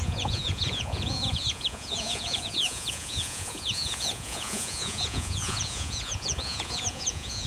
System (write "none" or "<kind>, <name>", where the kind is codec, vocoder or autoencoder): vocoder, Vocos